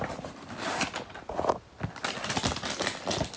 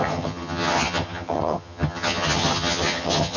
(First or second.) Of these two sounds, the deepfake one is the second